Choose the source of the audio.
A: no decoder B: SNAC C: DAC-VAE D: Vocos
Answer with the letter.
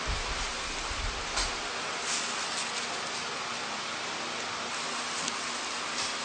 A